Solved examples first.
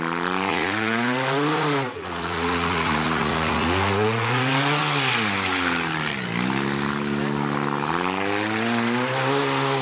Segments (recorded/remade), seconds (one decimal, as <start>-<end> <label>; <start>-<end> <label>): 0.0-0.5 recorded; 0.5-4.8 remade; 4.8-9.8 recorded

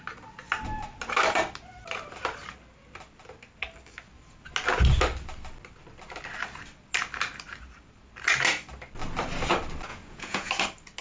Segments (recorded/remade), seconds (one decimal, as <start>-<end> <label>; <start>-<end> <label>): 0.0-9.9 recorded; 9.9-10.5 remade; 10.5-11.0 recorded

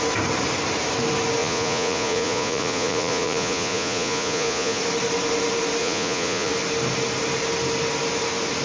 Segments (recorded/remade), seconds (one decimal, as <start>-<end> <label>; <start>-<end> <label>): 0.0-1.4 recorded; 1.4-4.8 remade; 4.8-5.8 recorded; 5.8-6.5 remade; 6.5-8.6 recorded

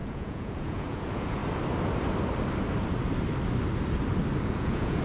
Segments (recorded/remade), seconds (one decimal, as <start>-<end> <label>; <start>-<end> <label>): 0.0-1.4 remade; 1.4-4.4 recorded; 4.4-5.0 remade

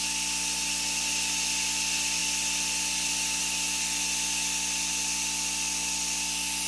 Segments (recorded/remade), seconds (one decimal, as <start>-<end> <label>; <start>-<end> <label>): 0.0-6.7 recorded

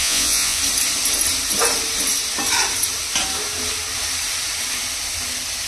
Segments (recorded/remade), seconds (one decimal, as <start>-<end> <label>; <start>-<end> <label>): 0.0-0.6 remade; 0.6-5.7 recorded